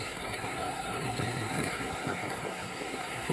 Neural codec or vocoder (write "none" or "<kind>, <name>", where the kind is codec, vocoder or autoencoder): codec, SNAC